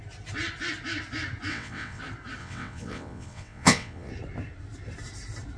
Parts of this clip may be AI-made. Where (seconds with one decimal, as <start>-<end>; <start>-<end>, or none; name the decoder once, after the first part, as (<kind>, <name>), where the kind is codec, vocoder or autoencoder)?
1.5-2.0 (vocoder, WaveNeXt); 2.4-4.1